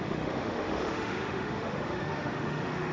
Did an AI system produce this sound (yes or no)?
yes